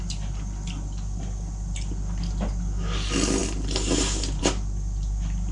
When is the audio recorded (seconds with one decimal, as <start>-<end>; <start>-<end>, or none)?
0.0-5.5